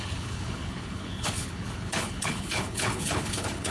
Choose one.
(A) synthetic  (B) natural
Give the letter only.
A